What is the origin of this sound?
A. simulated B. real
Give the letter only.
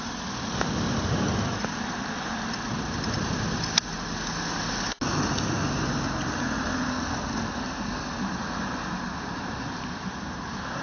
B